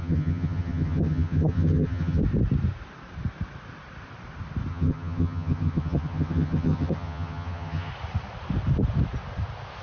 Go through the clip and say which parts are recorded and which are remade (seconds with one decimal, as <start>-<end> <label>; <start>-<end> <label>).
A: 0.0-2.2 remade; 2.2-4.7 recorded; 4.7-7.9 remade; 7.9-9.8 recorded